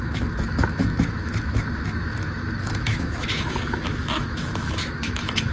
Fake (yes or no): yes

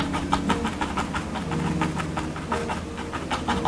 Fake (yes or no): no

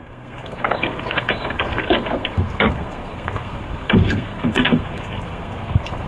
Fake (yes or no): yes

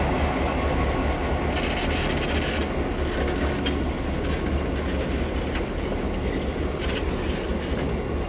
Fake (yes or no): no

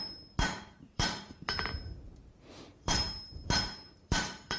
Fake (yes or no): yes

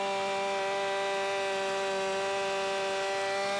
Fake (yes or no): no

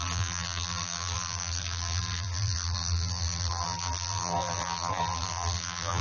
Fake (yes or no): yes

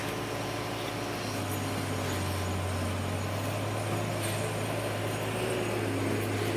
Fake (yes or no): no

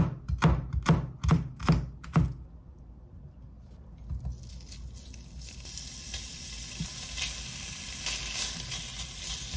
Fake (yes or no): no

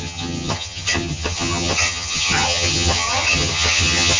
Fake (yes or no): yes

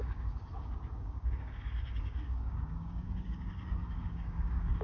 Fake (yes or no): yes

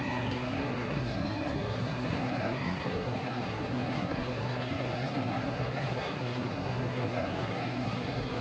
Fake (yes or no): yes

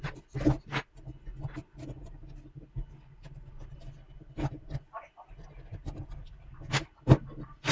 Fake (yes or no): no